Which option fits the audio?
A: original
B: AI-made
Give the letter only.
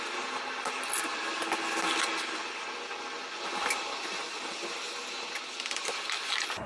A